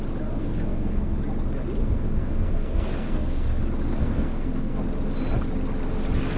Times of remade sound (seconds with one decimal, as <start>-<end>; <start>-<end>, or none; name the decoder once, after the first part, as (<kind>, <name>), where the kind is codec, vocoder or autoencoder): 0.4-1.2 (codec, SNAC); 1.8-3.6; 4.0-4.8